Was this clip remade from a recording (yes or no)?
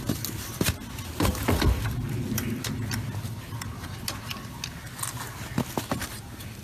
no